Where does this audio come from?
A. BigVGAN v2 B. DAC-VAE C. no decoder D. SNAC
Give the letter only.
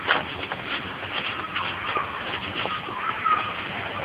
C